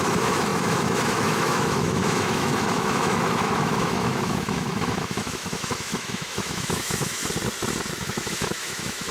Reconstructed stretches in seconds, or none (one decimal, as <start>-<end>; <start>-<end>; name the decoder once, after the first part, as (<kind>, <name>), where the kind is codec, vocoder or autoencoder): 0.0-7.2 (autoencoder, DAC-VAE); 8.0-9.1